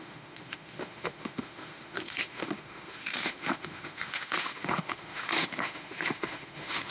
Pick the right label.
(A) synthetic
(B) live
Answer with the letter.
A